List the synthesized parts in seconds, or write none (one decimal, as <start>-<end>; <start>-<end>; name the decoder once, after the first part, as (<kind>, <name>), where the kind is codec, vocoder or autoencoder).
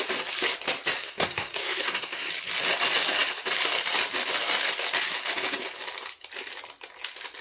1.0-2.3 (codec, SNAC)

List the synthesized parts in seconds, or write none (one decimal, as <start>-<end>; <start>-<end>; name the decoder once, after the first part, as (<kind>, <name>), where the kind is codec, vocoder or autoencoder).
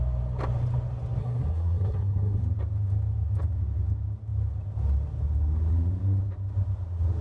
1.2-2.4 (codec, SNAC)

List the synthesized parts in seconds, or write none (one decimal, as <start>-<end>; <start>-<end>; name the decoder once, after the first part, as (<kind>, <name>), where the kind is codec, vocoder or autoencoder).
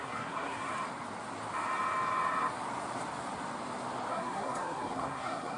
0.0-0.7 (codec, SNAC); 4.1-5.6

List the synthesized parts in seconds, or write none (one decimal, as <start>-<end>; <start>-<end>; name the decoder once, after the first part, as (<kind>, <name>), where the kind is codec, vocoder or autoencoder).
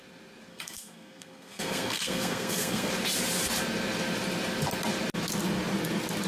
0.5-2.9 (codec, SNAC)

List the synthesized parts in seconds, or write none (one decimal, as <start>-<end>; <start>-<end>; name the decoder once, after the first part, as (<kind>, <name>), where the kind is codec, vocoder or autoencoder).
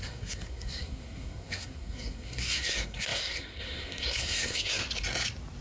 0.0-4.8 (codec, SNAC)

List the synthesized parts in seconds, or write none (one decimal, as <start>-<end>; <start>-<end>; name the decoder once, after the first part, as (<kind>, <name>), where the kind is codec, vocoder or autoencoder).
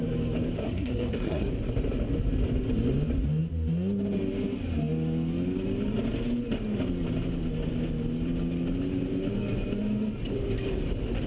0.6-1.5 (codec, SNAC)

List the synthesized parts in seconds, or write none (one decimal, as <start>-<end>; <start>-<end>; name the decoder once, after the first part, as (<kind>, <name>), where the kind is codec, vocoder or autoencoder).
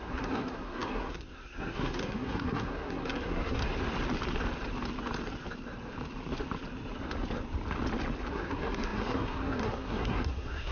0.0-3.6 (codec, SNAC); 8.3-10.7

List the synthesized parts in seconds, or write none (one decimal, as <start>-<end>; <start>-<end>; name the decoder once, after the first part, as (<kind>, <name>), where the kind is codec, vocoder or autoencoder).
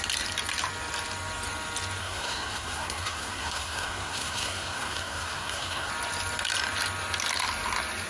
2.0-5.9 (codec, SNAC)